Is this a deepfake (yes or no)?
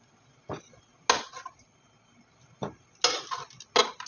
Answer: no